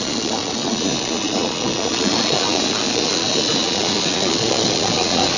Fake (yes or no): yes